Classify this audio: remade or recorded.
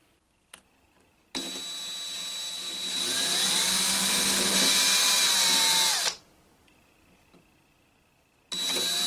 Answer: recorded